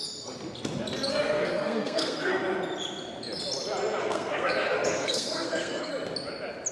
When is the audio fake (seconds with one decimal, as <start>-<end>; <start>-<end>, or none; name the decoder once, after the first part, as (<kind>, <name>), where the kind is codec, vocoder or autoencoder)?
1.1-2.3 (codec, SNAC); 4.0-5.9